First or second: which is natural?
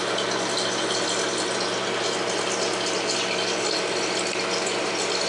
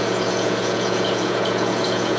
first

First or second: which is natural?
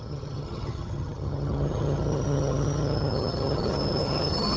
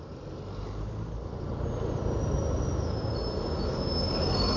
second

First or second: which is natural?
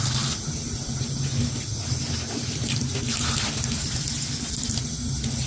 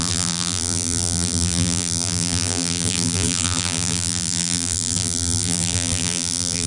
first